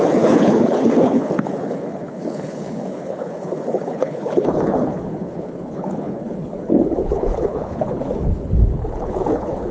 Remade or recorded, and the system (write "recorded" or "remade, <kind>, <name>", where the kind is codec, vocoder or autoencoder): remade, codec, HILCodec